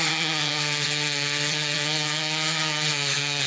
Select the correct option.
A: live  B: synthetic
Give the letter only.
B